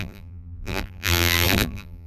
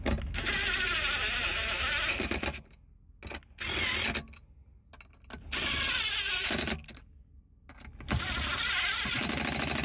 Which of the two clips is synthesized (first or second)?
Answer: first